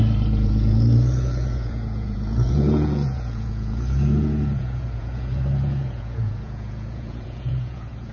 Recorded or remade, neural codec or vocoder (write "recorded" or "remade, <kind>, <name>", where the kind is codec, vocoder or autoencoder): remade, vocoder, Vocos